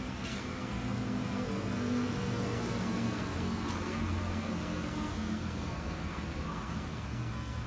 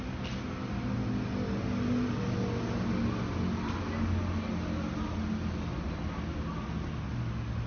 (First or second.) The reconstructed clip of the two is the first